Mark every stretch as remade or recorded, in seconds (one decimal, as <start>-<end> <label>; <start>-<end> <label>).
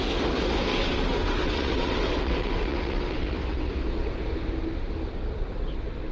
0.0-0.7 recorded; 0.7-3.7 remade; 3.7-6.1 recorded